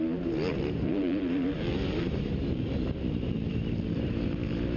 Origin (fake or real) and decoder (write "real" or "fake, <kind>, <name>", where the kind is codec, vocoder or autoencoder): fake, vocoder, BigVGAN v2